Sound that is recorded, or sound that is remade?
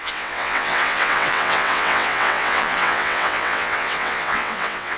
remade